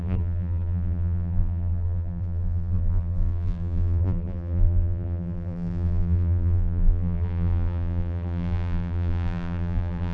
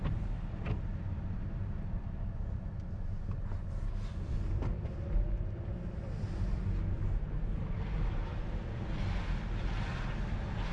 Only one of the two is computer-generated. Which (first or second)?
first